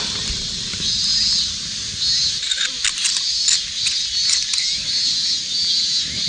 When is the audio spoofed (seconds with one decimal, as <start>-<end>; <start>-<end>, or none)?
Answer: none